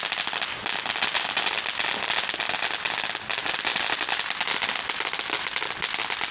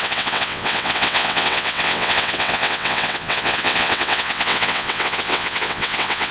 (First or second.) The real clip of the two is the first